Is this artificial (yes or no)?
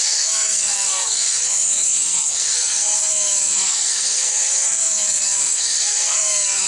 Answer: yes